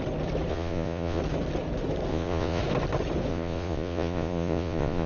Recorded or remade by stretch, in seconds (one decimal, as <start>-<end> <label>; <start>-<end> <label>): 0.0-0.5 recorded; 0.5-1.2 remade; 1.2-2.1 recorded; 2.1-2.6 remade; 2.6-3.3 recorded; 3.3-5.1 remade